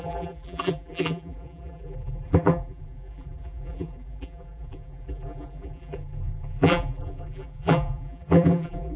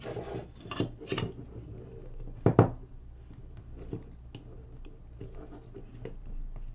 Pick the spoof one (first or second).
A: first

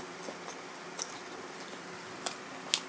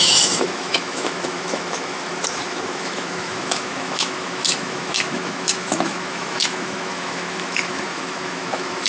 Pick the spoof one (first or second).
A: second